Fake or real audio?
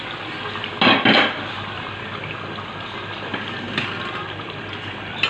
real